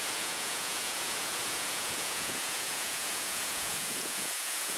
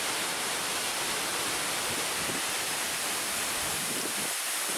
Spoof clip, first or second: first